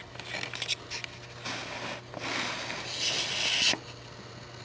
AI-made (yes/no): no